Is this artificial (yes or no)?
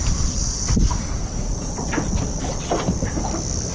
no